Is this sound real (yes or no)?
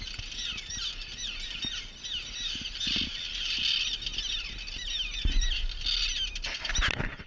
yes